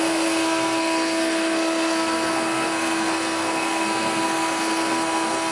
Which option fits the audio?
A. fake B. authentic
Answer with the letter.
A